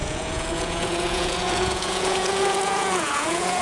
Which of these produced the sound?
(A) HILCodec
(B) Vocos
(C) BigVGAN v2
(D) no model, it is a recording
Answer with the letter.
B